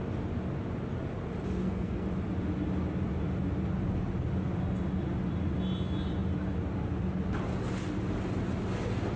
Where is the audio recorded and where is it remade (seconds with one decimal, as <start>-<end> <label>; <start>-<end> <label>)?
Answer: 0.0-1.6 recorded; 1.6-2.1 remade; 2.1-9.2 recorded